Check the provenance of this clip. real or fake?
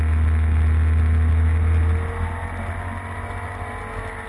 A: real